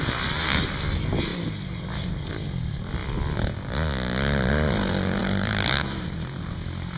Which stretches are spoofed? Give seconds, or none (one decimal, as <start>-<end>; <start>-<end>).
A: 5.2-7.0